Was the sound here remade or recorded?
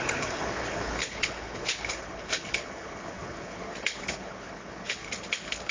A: remade